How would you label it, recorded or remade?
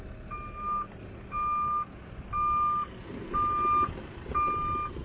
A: recorded